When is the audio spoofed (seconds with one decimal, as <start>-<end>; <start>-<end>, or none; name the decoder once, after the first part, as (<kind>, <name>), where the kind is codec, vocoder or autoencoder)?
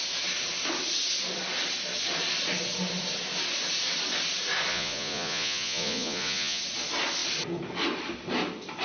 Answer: 4.7-6.6 (vocoder, Vocos)